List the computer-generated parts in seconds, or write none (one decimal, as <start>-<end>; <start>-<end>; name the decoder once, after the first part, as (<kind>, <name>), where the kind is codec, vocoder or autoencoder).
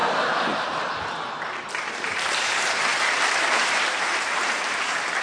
1.9-2.9 (vocoder, BigVGAN v2); 3.9-5.2